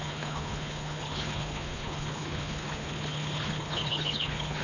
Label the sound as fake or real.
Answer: fake